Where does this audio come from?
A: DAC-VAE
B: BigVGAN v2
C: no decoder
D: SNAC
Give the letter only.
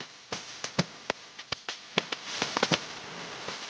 C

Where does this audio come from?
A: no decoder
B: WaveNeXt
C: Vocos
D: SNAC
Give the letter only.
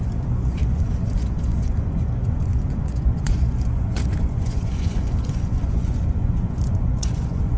C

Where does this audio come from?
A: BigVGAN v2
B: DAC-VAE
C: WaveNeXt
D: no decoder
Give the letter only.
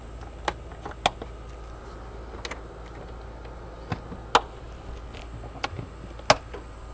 D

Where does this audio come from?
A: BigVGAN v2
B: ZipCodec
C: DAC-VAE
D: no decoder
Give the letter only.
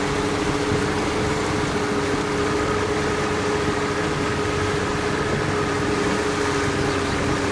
D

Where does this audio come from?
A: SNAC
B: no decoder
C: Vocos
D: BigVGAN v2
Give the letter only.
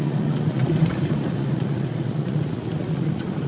C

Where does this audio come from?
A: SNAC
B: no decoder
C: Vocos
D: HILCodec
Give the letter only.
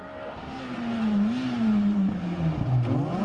B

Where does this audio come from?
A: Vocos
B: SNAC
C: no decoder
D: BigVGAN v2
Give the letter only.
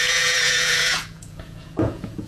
A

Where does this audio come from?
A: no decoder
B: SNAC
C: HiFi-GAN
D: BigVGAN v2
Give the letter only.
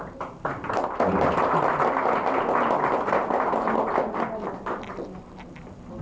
A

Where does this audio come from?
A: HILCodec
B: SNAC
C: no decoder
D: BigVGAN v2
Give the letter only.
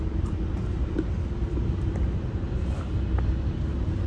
C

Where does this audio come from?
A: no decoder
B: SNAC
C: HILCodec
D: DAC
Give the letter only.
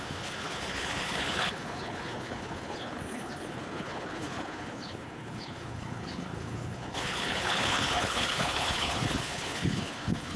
C